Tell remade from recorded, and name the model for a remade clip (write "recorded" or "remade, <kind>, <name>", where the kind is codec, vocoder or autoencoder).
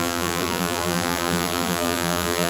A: remade, vocoder, BigVGAN v2